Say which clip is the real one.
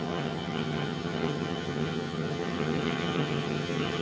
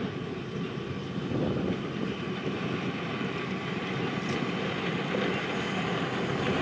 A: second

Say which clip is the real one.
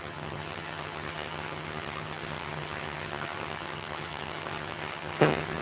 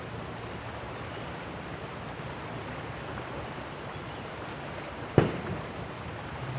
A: second